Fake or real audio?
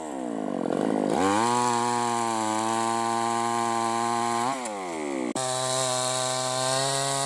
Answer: real